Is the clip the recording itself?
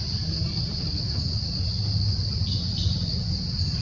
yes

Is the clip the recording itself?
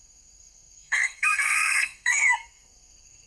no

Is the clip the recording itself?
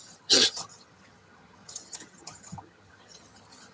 no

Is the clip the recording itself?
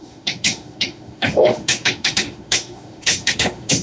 no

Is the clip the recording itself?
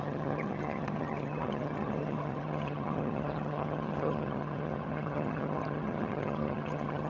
no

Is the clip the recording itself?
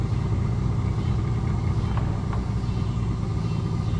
yes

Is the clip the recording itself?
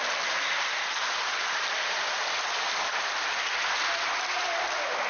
yes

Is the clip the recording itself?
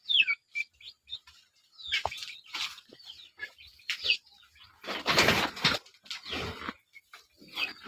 yes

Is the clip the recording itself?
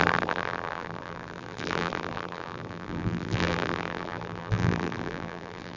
no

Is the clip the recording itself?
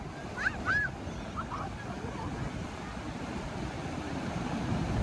yes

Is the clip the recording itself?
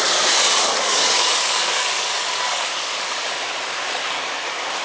no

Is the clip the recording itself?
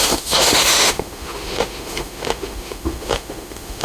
no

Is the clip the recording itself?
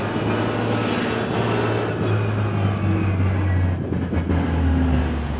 yes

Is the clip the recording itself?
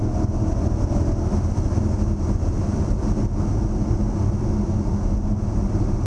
yes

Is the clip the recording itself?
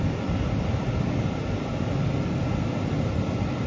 yes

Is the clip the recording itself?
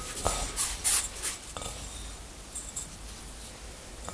yes